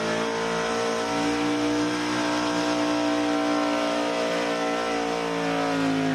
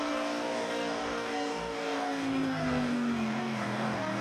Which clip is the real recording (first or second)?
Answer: first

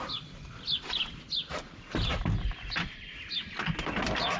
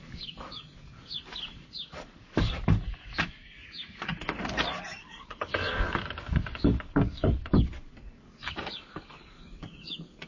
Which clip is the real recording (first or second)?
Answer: first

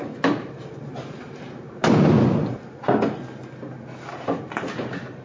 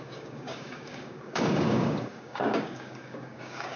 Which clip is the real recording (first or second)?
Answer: first